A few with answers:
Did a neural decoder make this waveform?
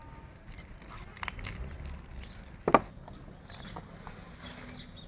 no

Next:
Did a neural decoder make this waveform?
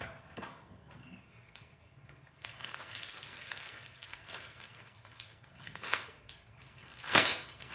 yes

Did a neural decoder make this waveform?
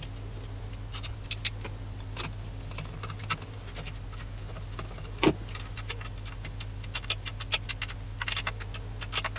no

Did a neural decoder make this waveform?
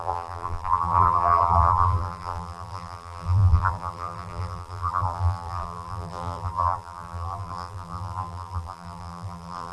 yes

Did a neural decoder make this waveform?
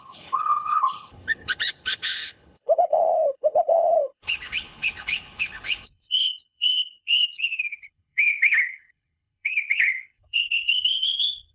yes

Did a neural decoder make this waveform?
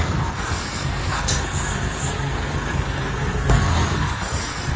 yes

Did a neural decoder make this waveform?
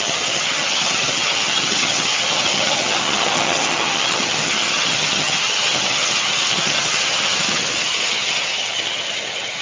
yes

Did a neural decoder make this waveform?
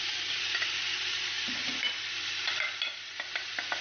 no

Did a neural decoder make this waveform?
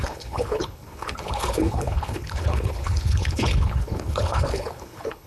yes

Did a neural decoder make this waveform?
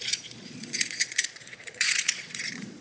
yes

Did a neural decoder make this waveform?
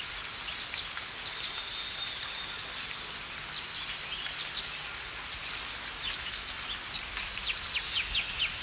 no